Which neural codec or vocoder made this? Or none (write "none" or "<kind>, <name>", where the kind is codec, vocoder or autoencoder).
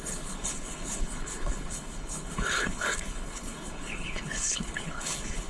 codec, HILCodec